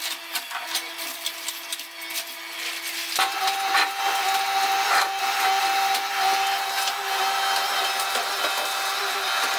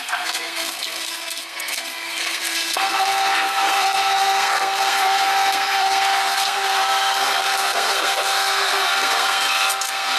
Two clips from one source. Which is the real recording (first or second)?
first